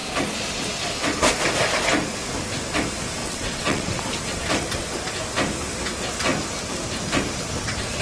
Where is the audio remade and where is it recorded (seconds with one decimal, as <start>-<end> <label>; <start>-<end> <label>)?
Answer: 0.0-3.2 recorded; 3.2-4.0 remade; 4.0-8.0 recorded